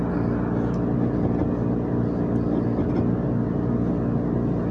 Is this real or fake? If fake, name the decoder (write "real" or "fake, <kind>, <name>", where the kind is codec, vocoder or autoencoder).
real